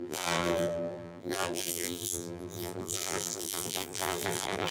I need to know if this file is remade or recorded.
remade